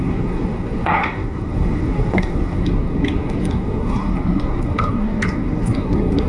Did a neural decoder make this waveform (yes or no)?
yes